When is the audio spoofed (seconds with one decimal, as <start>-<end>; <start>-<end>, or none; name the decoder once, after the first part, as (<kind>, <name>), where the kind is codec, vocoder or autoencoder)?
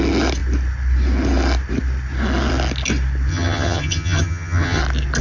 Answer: 3.3-4.8 (vocoder, HiFi-GAN)